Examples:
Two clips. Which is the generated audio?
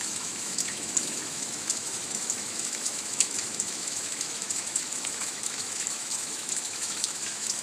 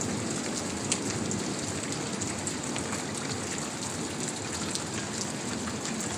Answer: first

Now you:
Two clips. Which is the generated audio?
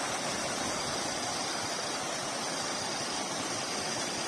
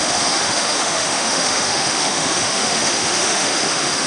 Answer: second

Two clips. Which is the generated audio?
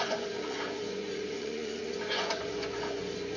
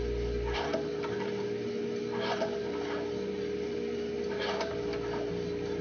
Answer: first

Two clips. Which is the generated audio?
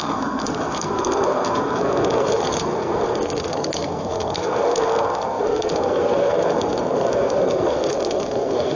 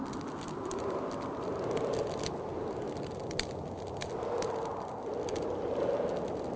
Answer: first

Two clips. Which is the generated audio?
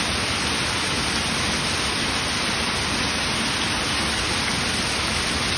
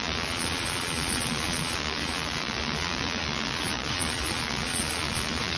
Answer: second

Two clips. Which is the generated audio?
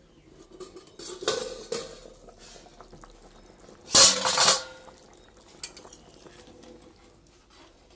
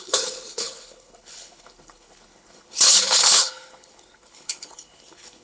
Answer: second